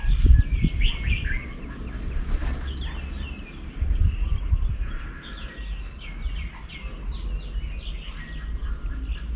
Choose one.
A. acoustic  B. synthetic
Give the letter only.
A